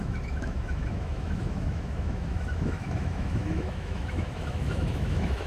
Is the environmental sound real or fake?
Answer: fake